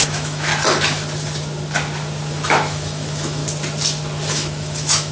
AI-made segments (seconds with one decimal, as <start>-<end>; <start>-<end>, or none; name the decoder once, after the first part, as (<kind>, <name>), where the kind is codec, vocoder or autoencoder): 0.0-0.5 (autoencoder, DAC-VAE); 2.3-3.4; 4.3-5.1